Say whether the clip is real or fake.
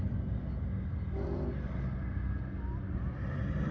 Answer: real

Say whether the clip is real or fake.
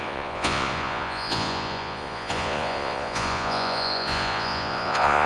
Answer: fake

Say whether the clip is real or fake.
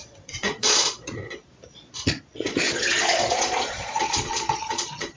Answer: fake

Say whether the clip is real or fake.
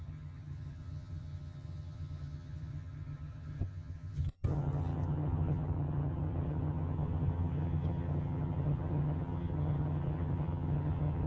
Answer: fake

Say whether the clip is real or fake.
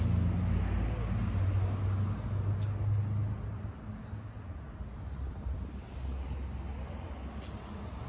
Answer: real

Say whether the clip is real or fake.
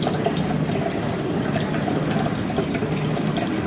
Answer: real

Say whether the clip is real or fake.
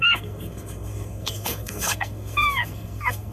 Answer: fake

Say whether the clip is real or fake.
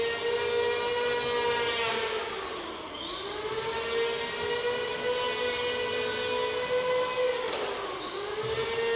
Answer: real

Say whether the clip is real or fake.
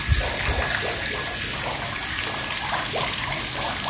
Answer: real